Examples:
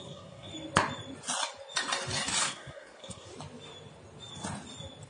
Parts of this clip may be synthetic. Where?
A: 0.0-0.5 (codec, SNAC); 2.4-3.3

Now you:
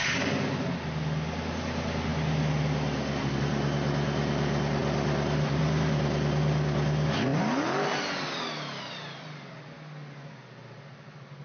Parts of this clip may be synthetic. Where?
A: none

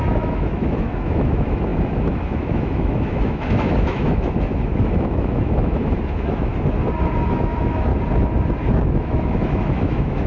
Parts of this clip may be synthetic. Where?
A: 0.0-6.5 (autoencoder, DAC-VAE); 7.3-7.9; 8.7-10.3

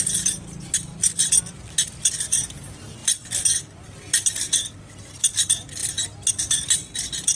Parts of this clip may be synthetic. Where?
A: none

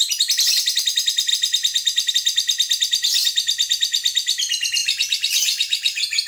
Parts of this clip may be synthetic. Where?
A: 4.8-6.3 (vocoder, BigVGAN v2)

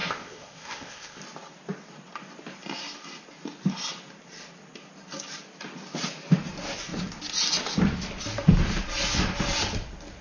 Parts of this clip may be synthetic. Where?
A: 0.0-1.2 (codec, ZipCodec)